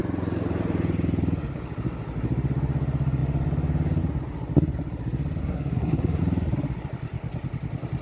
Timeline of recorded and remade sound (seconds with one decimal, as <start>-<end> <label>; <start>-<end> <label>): 0.0-5.4 recorded; 5.4-6.2 remade; 6.2-8.0 recorded